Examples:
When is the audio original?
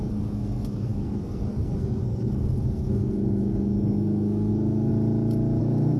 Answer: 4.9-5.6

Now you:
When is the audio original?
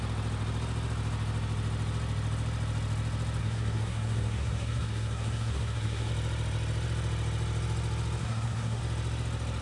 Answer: 0.0-3.4; 6.1-8.2; 8.8-9.6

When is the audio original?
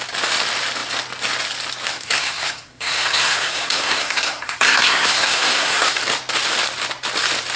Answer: 0.0-1.9; 6.0-7.6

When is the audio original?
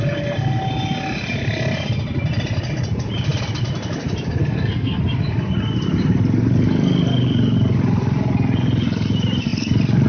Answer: 0.0-4.4; 5.0-10.1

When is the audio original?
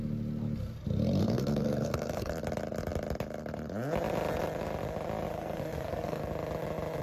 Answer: 0.0-1.2; 2.3-5.3; 6.2-7.0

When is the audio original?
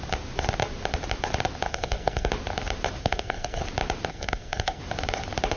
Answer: 0.0-1.7; 2.3-3.0; 3.6-4.1; 4.8-5.6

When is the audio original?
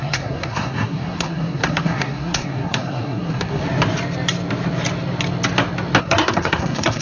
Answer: 3.6-6.0